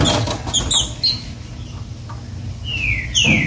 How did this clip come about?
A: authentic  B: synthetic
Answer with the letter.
A